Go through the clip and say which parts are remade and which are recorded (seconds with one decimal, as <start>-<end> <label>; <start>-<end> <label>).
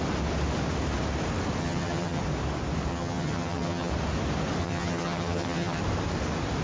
0.0-1.6 recorded; 1.6-2.2 remade; 2.2-2.9 recorded; 2.9-3.9 remade; 3.9-4.6 recorded; 4.6-5.8 remade; 5.8-6.6 recorded